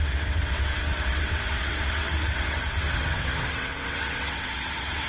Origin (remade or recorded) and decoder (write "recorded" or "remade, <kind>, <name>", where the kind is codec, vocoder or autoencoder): remade, vocoder, WaveNeXt